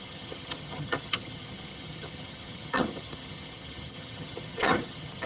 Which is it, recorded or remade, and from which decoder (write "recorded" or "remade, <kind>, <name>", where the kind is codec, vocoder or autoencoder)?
remade, vocoder, HiFi-GAN